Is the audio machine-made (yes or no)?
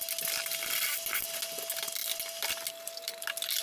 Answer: no